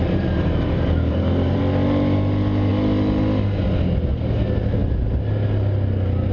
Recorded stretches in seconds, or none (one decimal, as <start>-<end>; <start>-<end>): 1.6-6.3

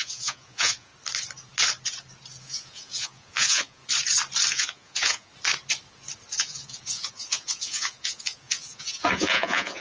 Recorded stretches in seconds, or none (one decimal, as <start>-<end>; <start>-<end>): 0.9-2.4; 3.8-4.5; 5.3-6.4

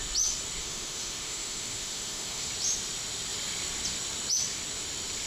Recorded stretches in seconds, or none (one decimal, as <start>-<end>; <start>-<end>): 0.0-0.6; 2.5-5.3

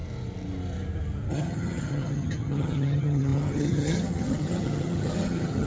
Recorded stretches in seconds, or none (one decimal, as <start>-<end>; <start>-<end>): 0.0-1.3

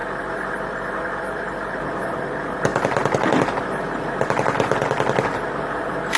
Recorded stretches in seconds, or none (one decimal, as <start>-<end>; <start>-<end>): 0.0-6.2

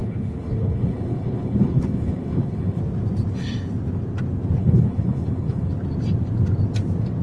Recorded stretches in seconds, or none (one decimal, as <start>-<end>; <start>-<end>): 2.8-4.6; 5.7-7.2